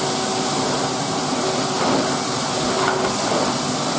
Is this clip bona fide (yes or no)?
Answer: yes